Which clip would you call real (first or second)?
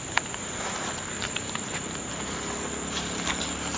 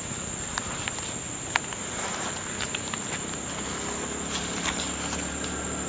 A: second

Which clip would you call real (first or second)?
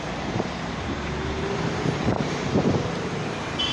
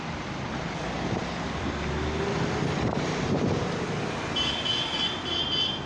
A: second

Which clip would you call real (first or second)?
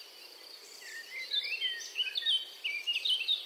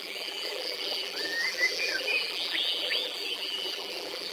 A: first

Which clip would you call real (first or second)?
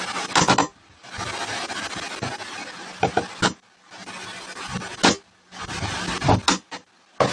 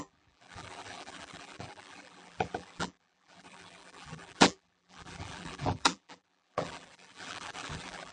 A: first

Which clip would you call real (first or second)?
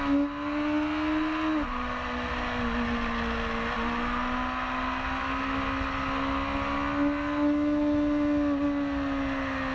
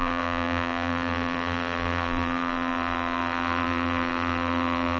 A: first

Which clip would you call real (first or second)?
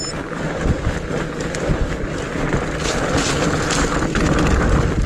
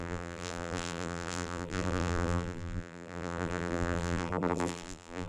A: first